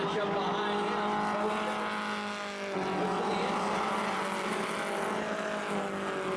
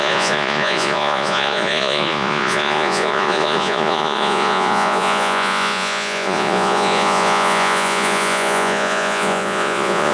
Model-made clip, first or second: second